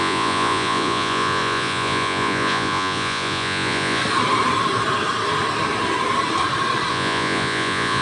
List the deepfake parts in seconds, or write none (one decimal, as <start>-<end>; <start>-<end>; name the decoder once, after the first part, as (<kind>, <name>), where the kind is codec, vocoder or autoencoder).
0.0-4.0 (vocoder, Vocos); 6.9-8.0